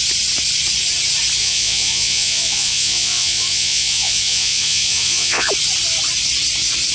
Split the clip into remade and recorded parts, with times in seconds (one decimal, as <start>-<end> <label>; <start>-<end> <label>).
0.0-1.4 recorded; 1.4-5.5 remade; 5.5-6.9 recorded